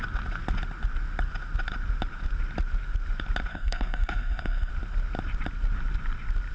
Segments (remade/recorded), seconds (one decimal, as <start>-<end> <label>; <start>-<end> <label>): 0.0-3.5 recorded; 3.5-4.7 remade; 4.7-6.5 recorded